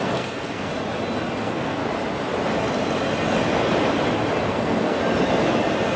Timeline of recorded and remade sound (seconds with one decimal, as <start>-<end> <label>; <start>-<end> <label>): 0.0-0.7 remade; 0.7-1.4 recorded; 1.4-1.8 remade; 1.8-4.5 recorded; 4.5-5.0 remade; 5.0-6.0 recorded